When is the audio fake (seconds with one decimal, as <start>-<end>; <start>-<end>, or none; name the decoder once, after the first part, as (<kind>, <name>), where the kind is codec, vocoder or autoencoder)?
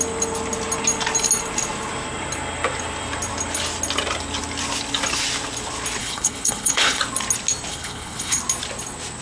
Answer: 6.0-7.0 (codec, HILCodec); 7.7-8.4